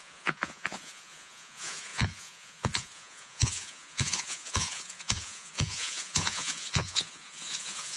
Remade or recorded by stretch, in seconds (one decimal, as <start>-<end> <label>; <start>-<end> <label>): 0.0-8.0 remade